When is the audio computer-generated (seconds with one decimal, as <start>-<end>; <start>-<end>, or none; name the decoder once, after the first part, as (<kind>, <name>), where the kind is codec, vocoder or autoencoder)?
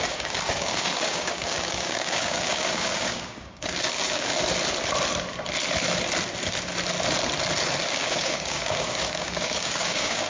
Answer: 0.0-4.3 (codec, DAC); 7.9-10.3